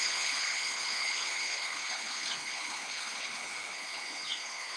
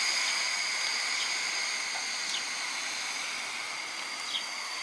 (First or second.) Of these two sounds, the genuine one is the second